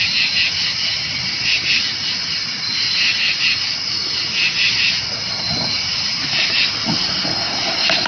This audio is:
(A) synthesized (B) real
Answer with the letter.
B